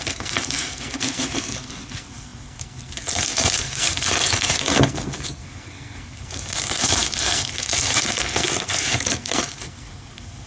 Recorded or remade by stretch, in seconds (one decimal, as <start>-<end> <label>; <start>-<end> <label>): 0.0-10.5 remade